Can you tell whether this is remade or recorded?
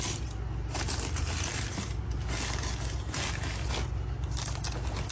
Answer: recorded